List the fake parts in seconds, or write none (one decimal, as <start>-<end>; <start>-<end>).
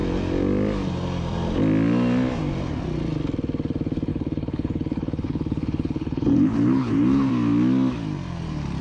4.1-7.3